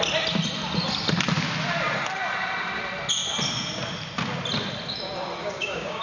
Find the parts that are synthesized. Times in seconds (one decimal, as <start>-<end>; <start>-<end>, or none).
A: 5.4-6.0